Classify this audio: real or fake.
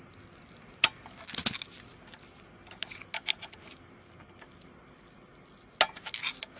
real